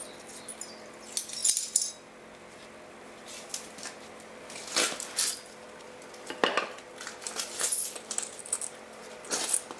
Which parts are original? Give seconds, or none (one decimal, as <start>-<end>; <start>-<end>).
0.0-9.8